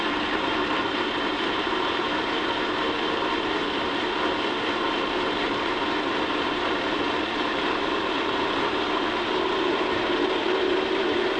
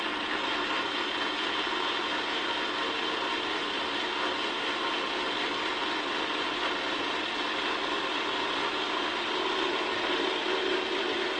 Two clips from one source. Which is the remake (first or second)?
first